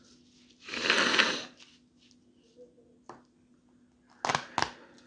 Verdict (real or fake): real